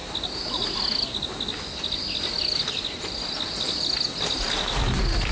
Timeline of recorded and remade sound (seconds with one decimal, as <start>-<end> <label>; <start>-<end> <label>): 0.0-5.3 recorded